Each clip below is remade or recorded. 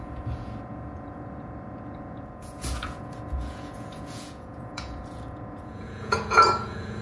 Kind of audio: remade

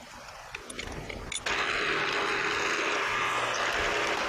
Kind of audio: recorded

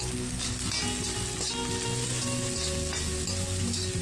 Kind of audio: recorded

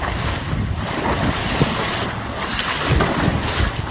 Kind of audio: recorded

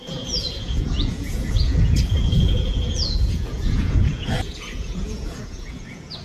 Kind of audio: remade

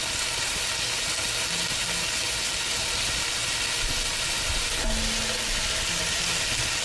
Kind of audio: recorded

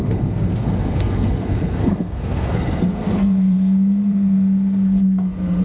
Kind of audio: remade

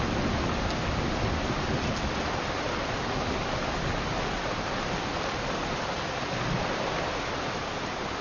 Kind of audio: recorded